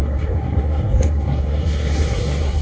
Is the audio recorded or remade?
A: remade